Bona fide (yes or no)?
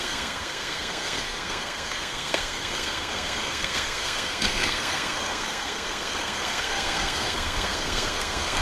no